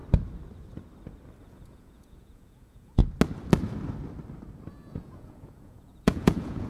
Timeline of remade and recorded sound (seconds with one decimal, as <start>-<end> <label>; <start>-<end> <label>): 0.0-1.4 recorded; 1.4-3.0 remade; 3.0-4.7 recorded; 4.7-6.7 remade